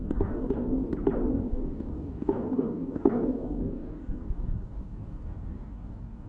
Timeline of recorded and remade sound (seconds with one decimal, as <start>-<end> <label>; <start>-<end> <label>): 0.0-0.8 remade; 0.8-1.3 recorded; 1.3-6.3 remade